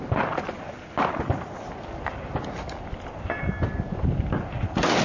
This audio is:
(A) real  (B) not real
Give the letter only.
A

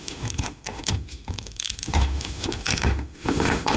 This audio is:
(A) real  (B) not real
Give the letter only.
B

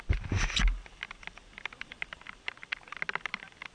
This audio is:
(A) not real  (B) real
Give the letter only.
B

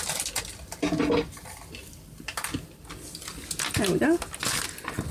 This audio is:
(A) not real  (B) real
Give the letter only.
B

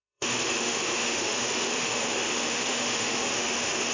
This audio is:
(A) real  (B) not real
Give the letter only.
B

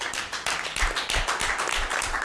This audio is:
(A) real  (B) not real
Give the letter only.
A